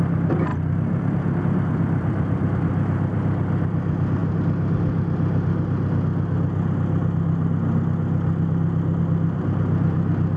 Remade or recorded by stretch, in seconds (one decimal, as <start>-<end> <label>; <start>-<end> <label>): 0.0-4.2 remade; 4.2-9.0 recorded; 9.0-10.4 remade